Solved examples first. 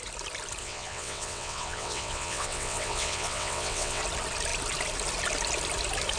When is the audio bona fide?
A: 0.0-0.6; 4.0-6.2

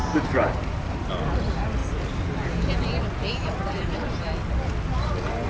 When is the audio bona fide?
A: 1.1-3.4; 4.3-5.5

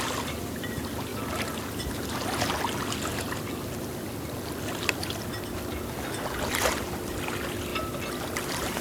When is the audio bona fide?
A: 0.0-1.1; 2.5-8.8

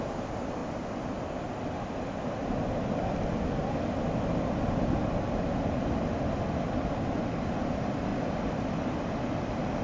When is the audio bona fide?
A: 0.0-0.6; 2.2-9.8